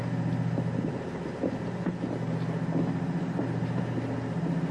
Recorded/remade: recorded